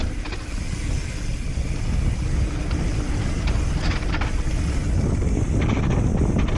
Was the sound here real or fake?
real